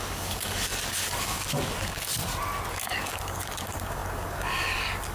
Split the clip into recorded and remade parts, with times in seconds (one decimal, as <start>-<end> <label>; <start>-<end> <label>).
0.0-2.1 remade; 2.1-2.7 recorded; 2.7-5.1 remade